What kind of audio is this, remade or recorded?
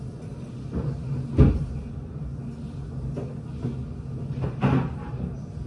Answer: recorded